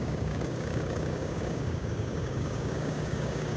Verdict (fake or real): fake